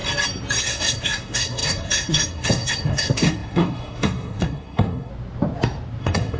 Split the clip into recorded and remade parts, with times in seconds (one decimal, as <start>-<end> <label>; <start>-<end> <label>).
0.0-0.6 recorded; 0.6-5.1 remade; 5.1-6.0 recorded; 6.0-6.4 remade